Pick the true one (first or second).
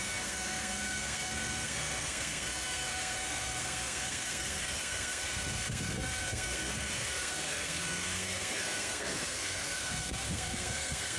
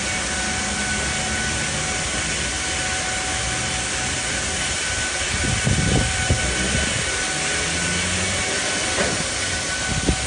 second